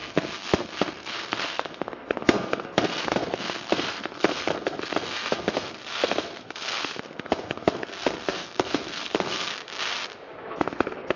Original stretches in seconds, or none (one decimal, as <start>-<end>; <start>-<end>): 9.5-10.5